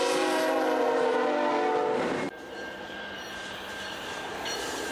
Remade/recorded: remade